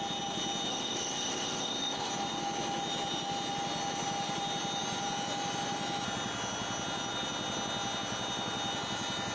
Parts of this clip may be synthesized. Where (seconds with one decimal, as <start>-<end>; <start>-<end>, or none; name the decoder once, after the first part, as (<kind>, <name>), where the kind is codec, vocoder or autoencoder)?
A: 0.7-2.1 (codec, ZipCodec)